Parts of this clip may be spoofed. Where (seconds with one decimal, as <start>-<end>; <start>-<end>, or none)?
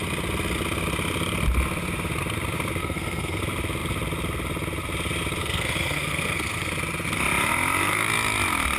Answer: 2.8-3.4; 5.4-6.7